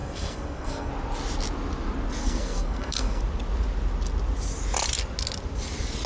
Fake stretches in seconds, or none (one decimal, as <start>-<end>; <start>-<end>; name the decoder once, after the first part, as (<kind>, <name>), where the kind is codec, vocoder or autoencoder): 0.0-0.9 (codec, SNAC); 2.2-3.2